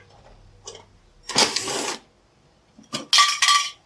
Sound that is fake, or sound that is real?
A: real